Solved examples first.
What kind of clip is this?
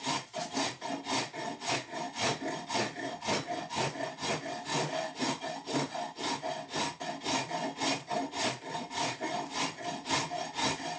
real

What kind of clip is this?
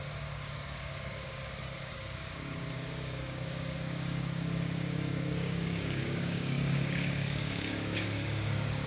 fake